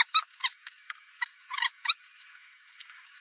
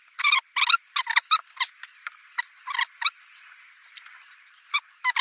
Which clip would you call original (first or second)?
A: second